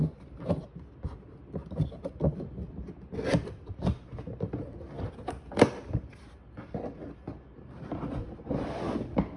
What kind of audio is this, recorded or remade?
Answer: recorded